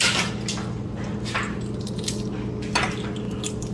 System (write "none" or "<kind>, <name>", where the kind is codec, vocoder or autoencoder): none